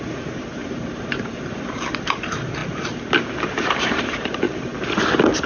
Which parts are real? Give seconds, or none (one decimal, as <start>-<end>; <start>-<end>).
2.6-3.4; 4.7-5.5